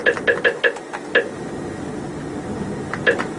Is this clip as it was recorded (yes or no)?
yes